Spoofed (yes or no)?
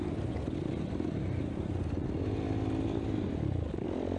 no